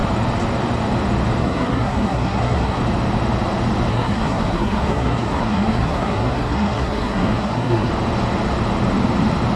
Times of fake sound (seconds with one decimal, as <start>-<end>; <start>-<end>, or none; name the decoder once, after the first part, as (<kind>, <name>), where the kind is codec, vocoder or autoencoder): 1.4-2.8 (codec, SNAC); 3.9-7.9